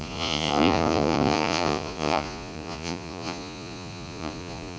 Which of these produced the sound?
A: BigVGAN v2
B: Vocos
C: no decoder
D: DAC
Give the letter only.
B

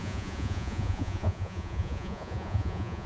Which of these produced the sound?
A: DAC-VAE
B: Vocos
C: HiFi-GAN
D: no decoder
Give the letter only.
B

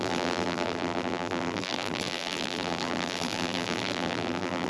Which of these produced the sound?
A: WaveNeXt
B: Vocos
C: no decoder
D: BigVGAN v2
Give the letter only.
D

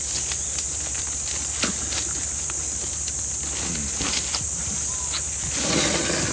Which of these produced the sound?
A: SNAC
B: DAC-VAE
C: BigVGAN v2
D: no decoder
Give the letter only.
D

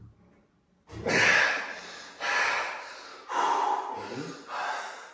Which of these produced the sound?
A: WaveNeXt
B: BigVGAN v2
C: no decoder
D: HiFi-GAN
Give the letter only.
C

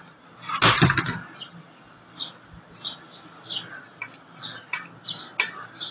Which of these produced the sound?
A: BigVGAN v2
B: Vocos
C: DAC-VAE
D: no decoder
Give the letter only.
D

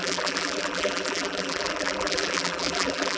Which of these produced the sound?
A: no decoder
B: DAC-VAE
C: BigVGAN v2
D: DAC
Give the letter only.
C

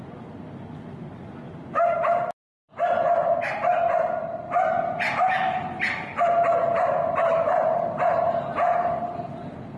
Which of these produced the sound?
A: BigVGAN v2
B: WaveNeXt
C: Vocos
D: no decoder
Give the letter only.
D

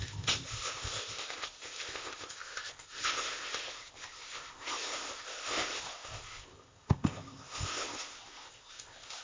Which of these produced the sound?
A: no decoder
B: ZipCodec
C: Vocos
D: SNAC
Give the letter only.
B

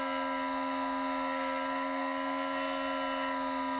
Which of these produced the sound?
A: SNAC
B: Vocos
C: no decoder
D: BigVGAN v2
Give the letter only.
C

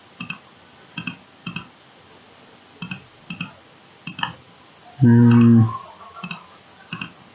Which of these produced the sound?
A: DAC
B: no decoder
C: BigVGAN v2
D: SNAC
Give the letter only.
B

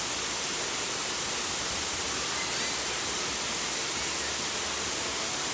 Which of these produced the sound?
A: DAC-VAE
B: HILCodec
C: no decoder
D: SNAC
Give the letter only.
C